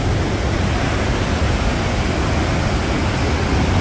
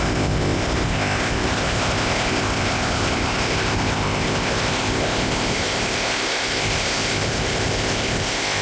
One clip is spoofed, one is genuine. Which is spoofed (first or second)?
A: second